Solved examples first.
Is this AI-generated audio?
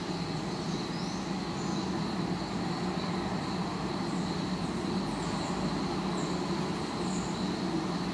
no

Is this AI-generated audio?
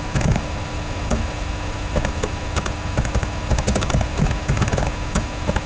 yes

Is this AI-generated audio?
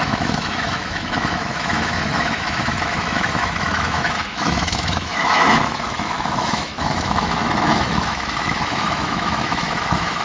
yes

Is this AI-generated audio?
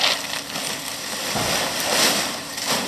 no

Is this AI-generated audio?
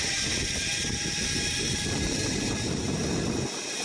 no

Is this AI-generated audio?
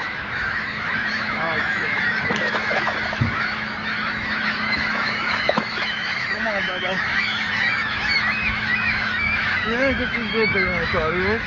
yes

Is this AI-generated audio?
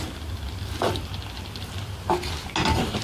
no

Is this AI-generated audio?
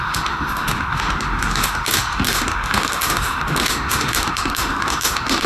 yes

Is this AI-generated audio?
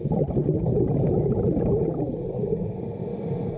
no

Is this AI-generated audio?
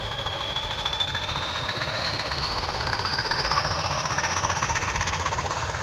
yes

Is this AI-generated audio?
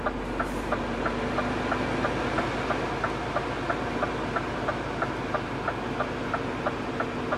no